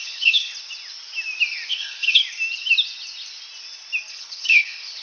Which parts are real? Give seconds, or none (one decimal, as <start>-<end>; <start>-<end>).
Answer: 0.5-1.7; 2.2-4.1